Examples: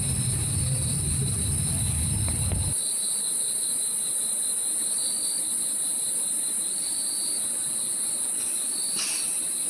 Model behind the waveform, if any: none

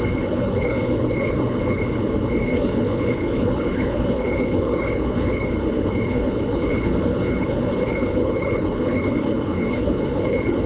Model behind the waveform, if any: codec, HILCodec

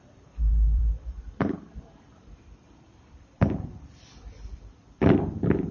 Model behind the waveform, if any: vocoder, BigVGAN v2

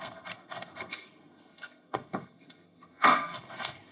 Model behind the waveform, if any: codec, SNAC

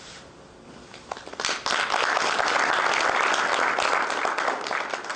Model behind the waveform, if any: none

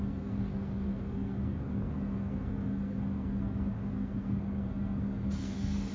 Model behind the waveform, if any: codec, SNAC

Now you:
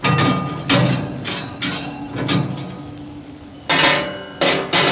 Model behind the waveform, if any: none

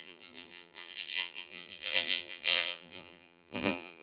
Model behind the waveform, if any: vocoder, BigVGAN v2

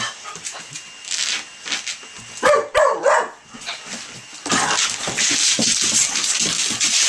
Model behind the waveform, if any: none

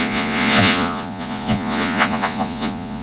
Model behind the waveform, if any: vocoder, Vocos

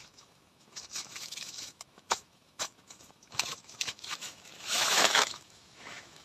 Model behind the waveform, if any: autoencoder, DAC-VAE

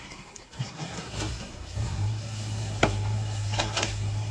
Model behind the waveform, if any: codec, SNAC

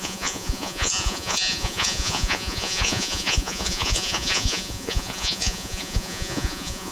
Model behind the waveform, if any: vocoder, Vocos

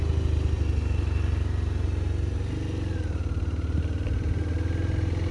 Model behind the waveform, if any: none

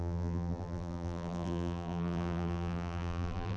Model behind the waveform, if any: vocoder, BigVGAN v2